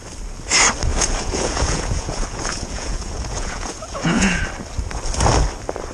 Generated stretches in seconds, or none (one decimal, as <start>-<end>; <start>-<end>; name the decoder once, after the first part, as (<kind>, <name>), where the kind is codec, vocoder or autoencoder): 0.9-4.4 (vocoder, Vocos)